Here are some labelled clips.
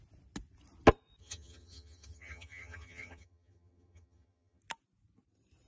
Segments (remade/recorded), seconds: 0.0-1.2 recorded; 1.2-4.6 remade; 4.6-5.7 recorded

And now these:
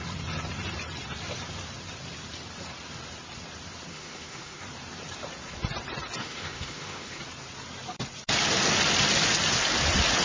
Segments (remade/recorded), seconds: 0.0-3.9 recorded; 3.9-4.6 remade; 4.6-6.2 recorded; 6.2-7.2 remade; 7.2-10.2 recorded

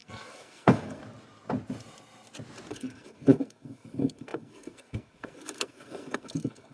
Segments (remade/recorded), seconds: 0.0-1.0 remade; 1.0-2.7 recorded; 2.7-6.7 remade

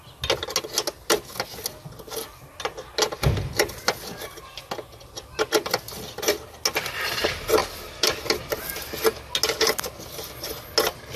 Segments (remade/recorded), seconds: 0.0-7.6 recorded; 7.6-8.2 remade; 8.2-11.2 recorded

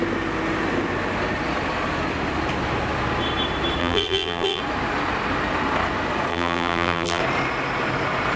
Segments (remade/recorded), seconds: 0.0-3.8 recorded; 3.8-4.6 remade; 4.6-6.3 recorded; 6.3-7.2 remade; 7.2-8.4 recorded

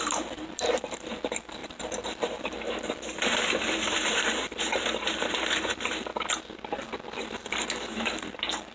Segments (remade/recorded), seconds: 0.0-6.1 remade; 6.1-7.6 recorded; 7.6-8.7 remade

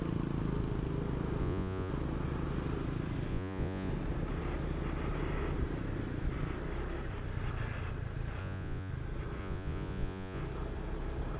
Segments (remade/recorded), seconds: 0.0-1.4 recorded; 1.4-1.9 remade; 1.9-3.3 recorded; 3.3-3.9 remade; 3.9-8.4 recorded; 8.4-8.9 remade; 8.9-9.4 recorded; 9.4-10.4 remade; 10.4-11.4 recorded

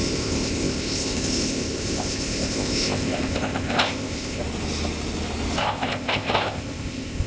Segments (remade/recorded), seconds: 0.0-4.4 remade; 4.4-5.6 recorded; 5.6-7.3 remade